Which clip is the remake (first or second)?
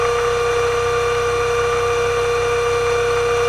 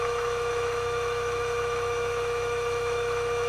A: second